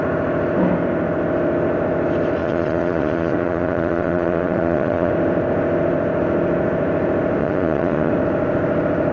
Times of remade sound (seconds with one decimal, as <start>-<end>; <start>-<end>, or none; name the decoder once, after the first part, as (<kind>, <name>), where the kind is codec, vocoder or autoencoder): 2.4-5.1 (vocoder, Vocos); 7.4-8.1